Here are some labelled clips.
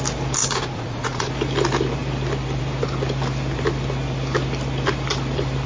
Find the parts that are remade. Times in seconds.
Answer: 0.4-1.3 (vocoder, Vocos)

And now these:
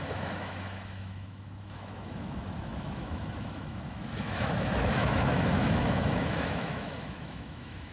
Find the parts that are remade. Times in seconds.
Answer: 0.0-7.9 (autoencoder, DAC-VAE)

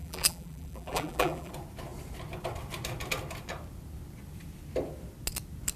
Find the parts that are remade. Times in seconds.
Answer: 0.0-1.5 (vocoder, BigVGAN v2)

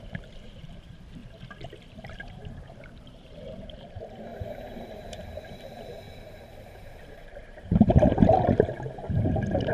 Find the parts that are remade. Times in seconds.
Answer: 0.0-1.2 (vocoder, BigVGAN v2); 1.9-9.7

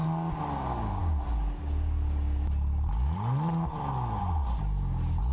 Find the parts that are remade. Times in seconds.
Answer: none

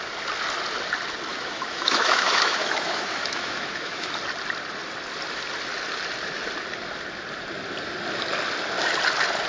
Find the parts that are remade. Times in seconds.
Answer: 1.3-4.1 (autoencoder, DAC-VAE)

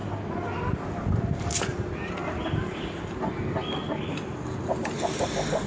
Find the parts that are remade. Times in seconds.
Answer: 0.0-0.7 (vocoder, BigVGAN v2); 2.2-5.7

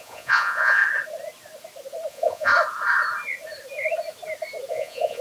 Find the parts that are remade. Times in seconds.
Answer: 0.0-0.8 (vocoder, Vocos); 2.1-2.5; 4.7-5.2